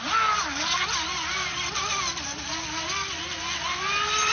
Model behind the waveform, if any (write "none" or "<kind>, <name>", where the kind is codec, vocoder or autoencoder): none